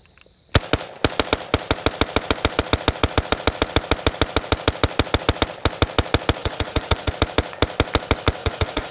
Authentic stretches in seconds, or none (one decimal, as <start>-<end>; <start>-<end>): 0.0-6.4; 7.1-8.4